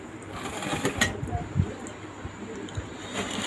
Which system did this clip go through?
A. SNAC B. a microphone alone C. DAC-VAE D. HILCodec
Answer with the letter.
B